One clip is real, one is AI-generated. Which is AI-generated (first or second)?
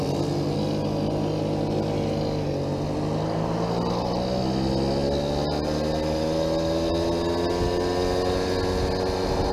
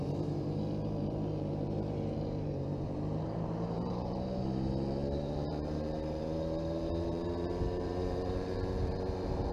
second